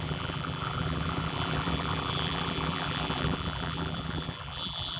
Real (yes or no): no